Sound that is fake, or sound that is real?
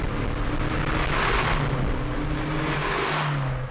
real